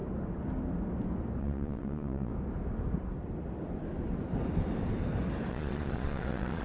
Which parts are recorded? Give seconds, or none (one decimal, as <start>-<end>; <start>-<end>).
0.0-1.4; 2.3-5.5